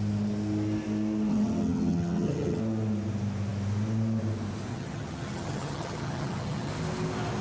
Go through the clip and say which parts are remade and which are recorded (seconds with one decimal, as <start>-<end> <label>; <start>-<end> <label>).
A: 0.0-1.3 recorded; 1.3-2.6 remade; 2.6-4.7 recorded; 4.7-6.7 remade; 6.7-7.4 recorded